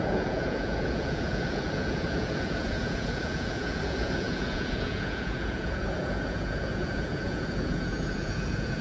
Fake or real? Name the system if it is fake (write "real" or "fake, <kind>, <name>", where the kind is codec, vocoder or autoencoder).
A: fake, vocoder, Vocos